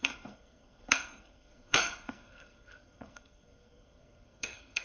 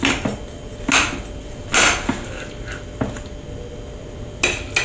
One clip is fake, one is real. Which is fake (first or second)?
first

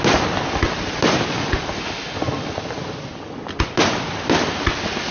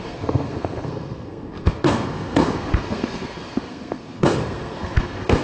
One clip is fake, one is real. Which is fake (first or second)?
second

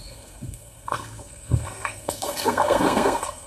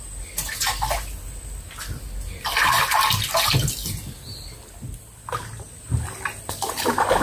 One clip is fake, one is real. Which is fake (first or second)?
first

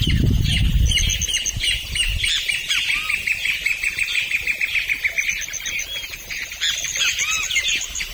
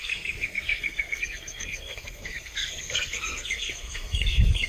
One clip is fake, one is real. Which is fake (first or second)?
second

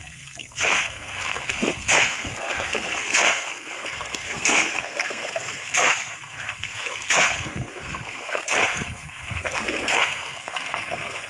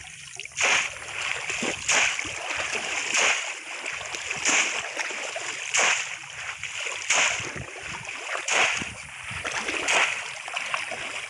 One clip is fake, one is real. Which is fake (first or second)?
first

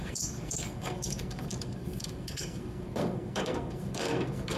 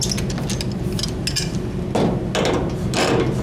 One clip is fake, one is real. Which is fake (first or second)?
first